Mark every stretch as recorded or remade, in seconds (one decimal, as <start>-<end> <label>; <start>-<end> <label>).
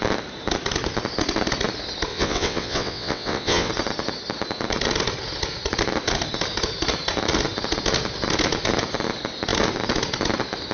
0.0-2.1 recorded; 2.1-3.7 remade; 3.7-10.7 recorded